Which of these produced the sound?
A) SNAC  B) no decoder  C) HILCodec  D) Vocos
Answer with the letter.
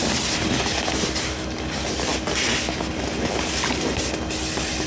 B